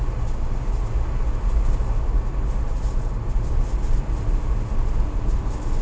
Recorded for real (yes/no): yes